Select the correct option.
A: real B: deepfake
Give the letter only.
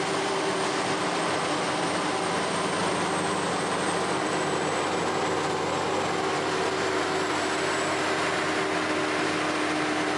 A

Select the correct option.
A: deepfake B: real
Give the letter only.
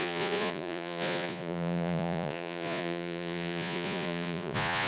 A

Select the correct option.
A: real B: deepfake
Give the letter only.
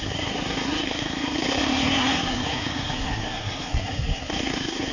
B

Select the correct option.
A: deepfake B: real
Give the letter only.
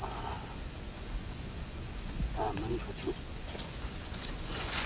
A